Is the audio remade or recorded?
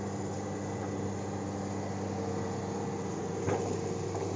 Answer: recorded